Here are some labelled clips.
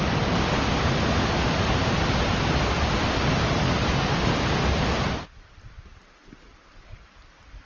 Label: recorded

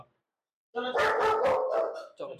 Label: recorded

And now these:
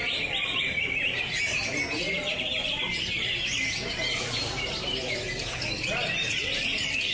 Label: remade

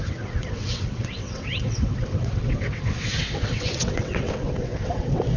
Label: remade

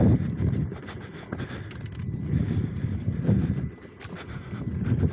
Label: recorded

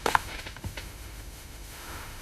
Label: remade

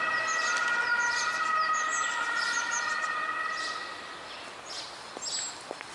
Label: recorded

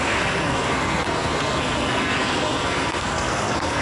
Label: remade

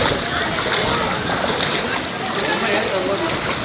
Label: recorded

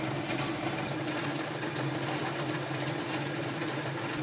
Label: recorded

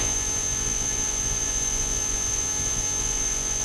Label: remade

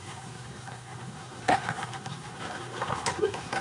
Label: remade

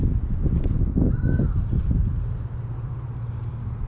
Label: recorded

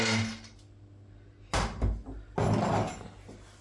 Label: recorded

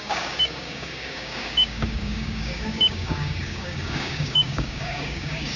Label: remade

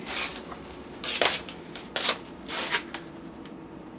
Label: recorded